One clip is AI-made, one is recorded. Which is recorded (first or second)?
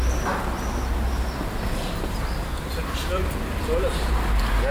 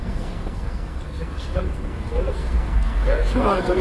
first